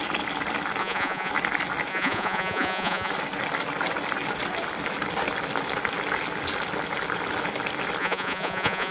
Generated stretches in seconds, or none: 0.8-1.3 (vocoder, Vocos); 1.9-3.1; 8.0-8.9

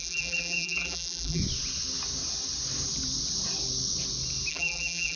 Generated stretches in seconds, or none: 0.0-1.4 (vocoder, BigVGAN v2); 4.5-5.2

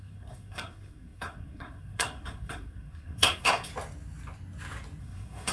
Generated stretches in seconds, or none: 0.0-3.7 (codec, SNAC); 5.0-5.5